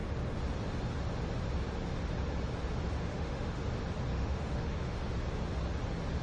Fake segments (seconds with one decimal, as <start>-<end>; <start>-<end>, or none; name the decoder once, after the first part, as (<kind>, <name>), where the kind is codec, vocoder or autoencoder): 3.0-3.6 (autoencoder, DAC-VAE); 4.1-5.1